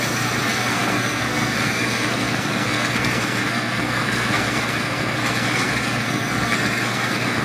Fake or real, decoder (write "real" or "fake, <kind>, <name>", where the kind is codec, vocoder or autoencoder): fake, codec, SNAC